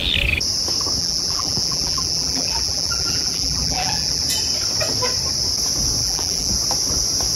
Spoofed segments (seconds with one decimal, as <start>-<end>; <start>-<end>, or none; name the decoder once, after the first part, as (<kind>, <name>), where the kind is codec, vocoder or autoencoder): 1.0-4.2 (vocoder, BigVGAN v2); 6.0-6.5